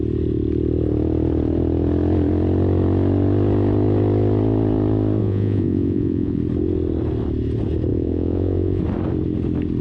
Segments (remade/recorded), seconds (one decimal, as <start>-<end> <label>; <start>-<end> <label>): 0.0-5.2 recorded; 5.2-6.4 remade; 6.4-7.9 recorded; 7.9-8.8 remade; 8.8-9.8 recorded